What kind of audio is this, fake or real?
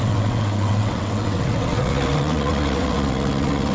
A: fake